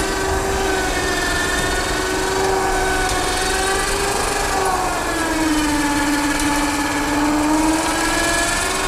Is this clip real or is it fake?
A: real